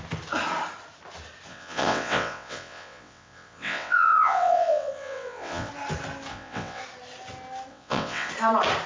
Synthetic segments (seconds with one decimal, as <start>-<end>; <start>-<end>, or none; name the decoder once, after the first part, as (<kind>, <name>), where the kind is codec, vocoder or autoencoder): 1.5-5.7 (vocoder, WaveNeXt); 6.3-6.8; 7.7-8.3